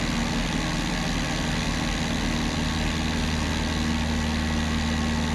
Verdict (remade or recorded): recorded